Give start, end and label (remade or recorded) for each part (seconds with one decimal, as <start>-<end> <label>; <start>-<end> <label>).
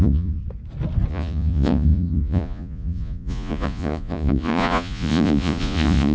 0.0-0.4 remade; 0.4-1.1 recorded; 1.1-6.1 remade